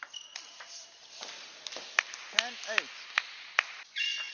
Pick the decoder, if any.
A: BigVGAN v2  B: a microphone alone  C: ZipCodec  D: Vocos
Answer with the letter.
B